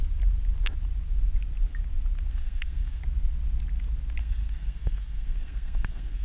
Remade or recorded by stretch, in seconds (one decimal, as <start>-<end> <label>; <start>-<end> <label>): 0.0-2.3 recorded; 2.3-3.0 remade; 3.0-4.2 recorded; 4.2-6.2 remade

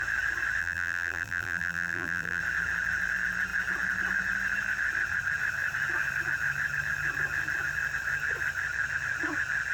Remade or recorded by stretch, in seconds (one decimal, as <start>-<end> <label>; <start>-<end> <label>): 0.0-0.6 recorded; 0.6-2.4 remade; 2.4-9.7 recorded

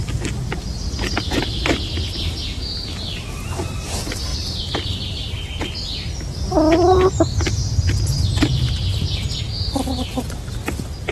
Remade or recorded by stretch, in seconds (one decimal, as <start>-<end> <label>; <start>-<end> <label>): 0.0-11.1 recorded

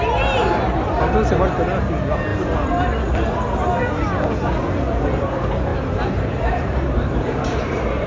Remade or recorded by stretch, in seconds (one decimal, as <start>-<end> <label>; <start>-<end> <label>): 0.0-2.3 recorded; 2.3-2.8 remade; 2.8-5.7 recorded; 5.7-8.1 remade

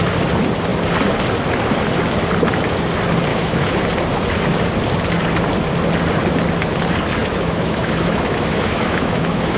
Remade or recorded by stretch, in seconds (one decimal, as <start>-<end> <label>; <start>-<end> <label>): 0.0-3.3 recorded; 3.3-3.8 remade; 3.8-7.2 recorded; 7.2-9.6 remade

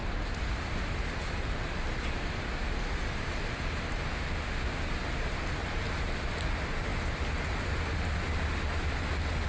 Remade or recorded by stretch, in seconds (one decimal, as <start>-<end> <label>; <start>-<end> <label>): 0.0-4.1 recorded; 4.1-4.8 remade; 4.8-9.5 recorded

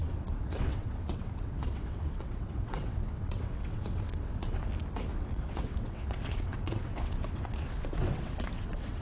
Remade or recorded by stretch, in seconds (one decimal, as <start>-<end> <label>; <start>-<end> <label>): 0.0-4.6 remade; 4.6-5.1 recorded; 5.1-9.0 remade